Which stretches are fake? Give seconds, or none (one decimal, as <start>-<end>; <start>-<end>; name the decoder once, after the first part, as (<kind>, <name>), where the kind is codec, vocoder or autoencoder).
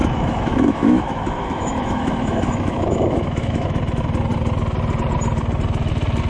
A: 0.0-3.8 (autoencoder, DAC-VAE)